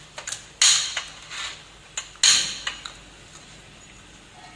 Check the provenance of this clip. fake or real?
real